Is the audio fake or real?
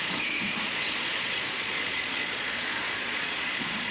fake